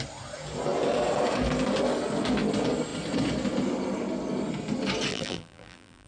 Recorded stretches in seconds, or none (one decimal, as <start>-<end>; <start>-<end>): 0.0-5.1